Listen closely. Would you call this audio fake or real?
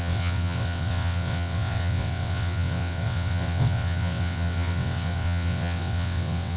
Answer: fake